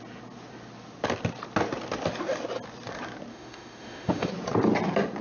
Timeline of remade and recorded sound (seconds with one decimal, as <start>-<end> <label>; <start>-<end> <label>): 0.0-3.3 recorded; 3.3-4.3 remade; 4.3-5.2 recorded